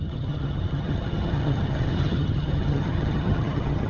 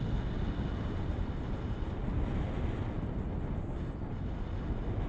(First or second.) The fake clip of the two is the first